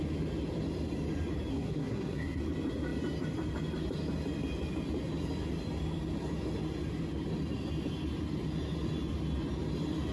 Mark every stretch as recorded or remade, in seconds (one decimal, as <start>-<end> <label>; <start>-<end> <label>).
0.0-1.5 recorded; 1.5-2.4 remade; 2.4-10.1 recorded